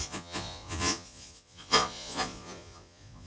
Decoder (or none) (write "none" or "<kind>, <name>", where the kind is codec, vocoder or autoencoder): vocoder, Vocos